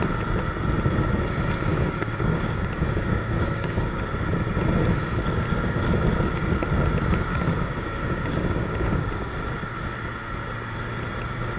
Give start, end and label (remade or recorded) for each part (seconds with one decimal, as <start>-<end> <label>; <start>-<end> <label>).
0.0-1.7 recorded; 1.7-4.0 remade; 4.0-7.3 recorded; 7.3-9.3 remade; 9.3-11.6 recorded